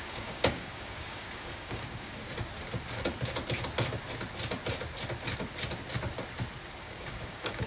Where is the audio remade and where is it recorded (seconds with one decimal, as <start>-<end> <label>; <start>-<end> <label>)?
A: 0.0-2.2 remade; 2.2-6.8 recorded; 6.8-7.7 remade